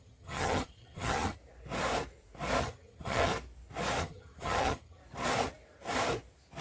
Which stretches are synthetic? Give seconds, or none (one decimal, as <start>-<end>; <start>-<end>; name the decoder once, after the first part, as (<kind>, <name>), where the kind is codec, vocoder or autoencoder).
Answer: 0.0-1.4 (vocoder, HiFi-GAN); 2.6-3.3; 4.0-5.0